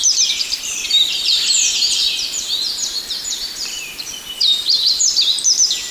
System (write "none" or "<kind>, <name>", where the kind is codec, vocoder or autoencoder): vocoder, BigVGAN v2